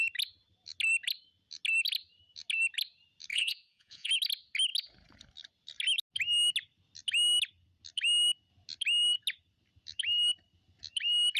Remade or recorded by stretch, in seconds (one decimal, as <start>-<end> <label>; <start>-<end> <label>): 0.0-3.3 recorded; 3.3-4.1 remade; 4.1-11.4 recorded